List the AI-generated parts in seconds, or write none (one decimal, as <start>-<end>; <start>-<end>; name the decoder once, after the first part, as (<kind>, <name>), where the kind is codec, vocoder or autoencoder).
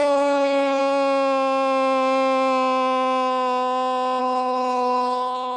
0.0-0.8 (codec, HILCodec); 4.2-5.6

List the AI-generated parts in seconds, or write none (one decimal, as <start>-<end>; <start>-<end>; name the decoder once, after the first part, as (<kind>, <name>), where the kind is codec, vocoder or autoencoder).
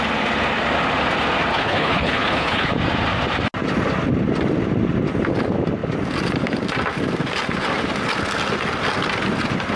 1.5-2.7 (codec, HILCodec)